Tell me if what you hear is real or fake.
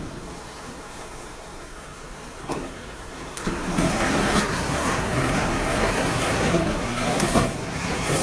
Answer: fake